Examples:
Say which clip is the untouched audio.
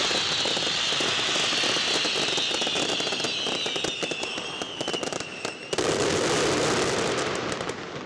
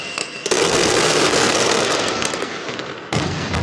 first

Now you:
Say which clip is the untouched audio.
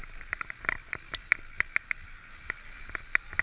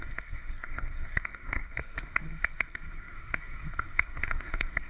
first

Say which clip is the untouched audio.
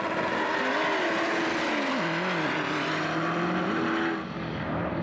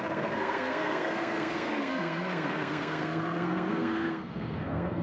first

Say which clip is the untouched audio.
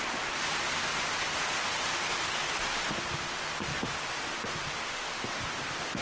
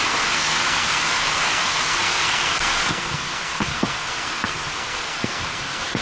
first